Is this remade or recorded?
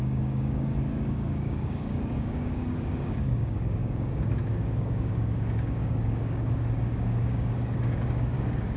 remade